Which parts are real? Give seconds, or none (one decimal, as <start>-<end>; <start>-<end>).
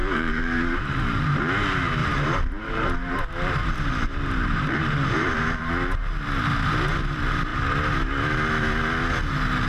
1.4-2.0; 5.7-9.7